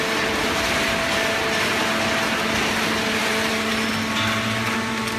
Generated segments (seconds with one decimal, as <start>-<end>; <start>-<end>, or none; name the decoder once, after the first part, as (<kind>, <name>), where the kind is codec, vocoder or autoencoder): 3.2-3.9 (vocoder, BigVGAN v2)